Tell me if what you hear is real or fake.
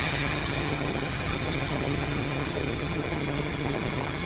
fake